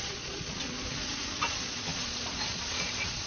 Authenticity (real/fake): fake